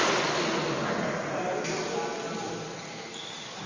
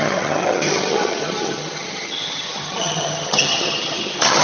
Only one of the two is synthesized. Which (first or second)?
second